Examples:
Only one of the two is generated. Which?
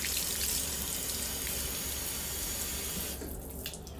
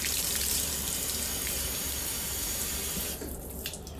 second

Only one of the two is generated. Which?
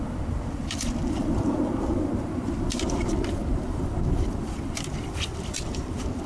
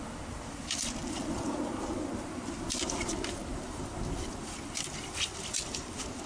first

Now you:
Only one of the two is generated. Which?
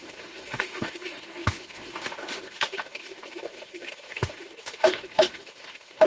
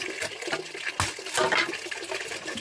first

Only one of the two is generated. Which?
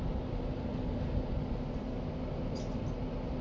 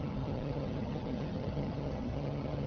second